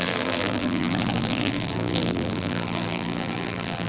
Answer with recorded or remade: remade